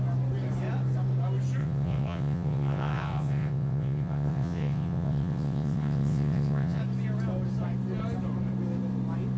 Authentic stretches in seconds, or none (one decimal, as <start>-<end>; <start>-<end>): 0.0-1.6; 6.8-9.4